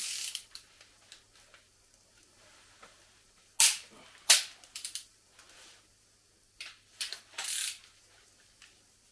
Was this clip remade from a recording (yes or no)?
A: no